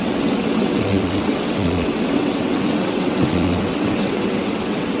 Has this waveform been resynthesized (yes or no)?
yes